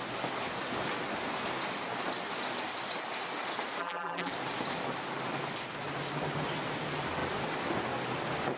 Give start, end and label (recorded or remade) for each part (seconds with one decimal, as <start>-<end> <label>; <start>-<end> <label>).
0.0-3.8 recorded; 3.8-4.3 remade; 4.3-8.6 recorded